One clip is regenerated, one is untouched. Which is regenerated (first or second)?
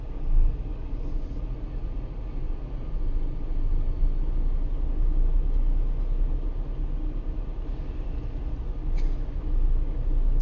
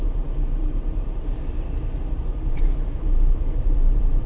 second